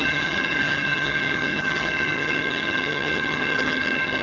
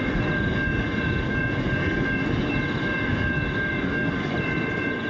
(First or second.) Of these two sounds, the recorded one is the second